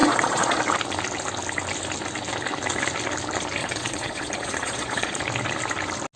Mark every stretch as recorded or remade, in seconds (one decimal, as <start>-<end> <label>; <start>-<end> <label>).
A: 0.0-0.6 remade; 0.6-3.6 recorded; 3.6-5.2 remade; 5.2-6.2 recorded